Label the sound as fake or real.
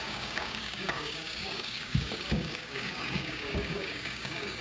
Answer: fake